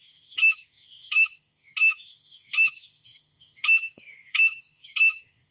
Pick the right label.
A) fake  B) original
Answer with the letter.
A